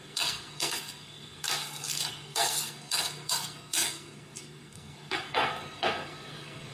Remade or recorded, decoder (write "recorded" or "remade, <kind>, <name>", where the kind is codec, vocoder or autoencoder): remade, codec, SNAC